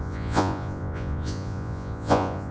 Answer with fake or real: fake